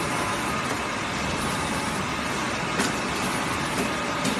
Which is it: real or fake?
real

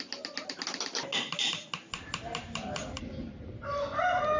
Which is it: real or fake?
real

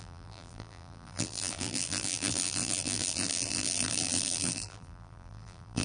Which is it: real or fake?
fake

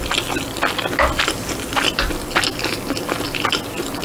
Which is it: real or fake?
real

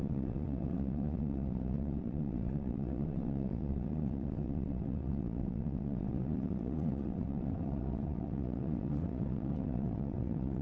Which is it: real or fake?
fake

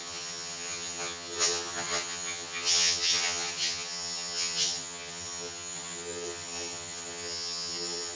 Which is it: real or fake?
fake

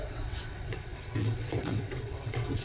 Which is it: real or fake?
fake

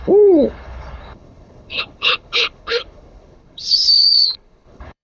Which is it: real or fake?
fake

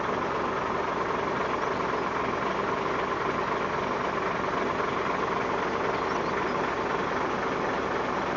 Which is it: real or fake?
real